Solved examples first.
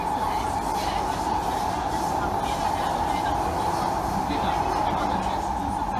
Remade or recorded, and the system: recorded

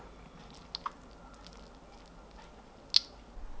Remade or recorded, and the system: recorded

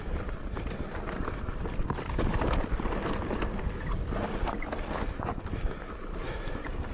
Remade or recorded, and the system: recorded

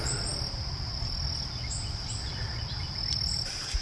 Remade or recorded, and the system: remade, vocoder, BigVGAN v2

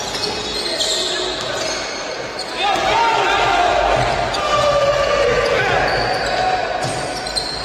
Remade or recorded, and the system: recorded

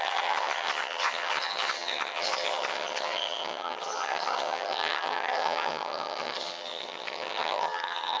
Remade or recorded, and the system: remade, vocoder, HiFi-GAN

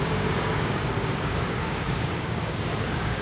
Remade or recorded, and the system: remade, codec, DAC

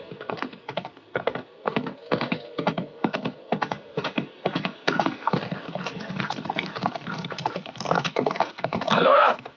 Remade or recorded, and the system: remade, codec, SNAC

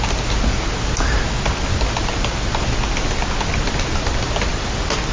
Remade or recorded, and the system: recorded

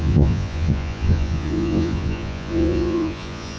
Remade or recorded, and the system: remade, vocoder, Vocos